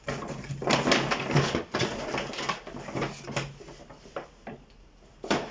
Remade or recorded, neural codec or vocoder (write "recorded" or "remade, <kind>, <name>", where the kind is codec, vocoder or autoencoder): recorded